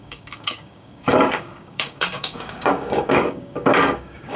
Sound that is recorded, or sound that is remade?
remade